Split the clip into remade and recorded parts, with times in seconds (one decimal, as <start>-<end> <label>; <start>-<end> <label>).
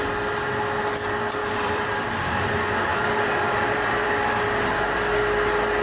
0.0-1.4 recorded; 1.4-2.5 remade; 2.5-2.9 recorded; 2.9-4.1 remade; 4.1-5.8 recorded